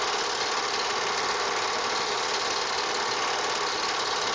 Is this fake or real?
real